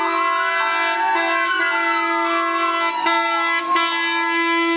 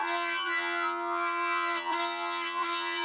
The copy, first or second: second